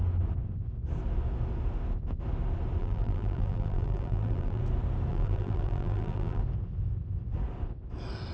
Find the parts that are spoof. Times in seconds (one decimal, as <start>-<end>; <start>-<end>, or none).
2.8-4.6; 5.1-6.4